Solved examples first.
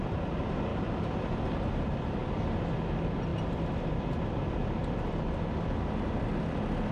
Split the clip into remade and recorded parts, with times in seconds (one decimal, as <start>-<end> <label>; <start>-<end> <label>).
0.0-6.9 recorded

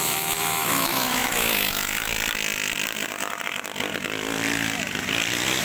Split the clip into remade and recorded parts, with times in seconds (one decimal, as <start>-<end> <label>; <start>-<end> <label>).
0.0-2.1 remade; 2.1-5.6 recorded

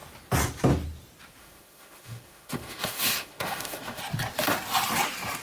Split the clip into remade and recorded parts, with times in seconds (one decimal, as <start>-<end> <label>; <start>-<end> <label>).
0.0-1.4 recorded; 1.4-4.0 remade; 4.0-5.4 recorded